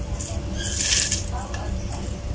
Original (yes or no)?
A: yes